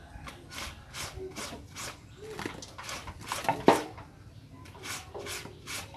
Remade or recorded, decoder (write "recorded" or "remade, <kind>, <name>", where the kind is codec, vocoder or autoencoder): recorded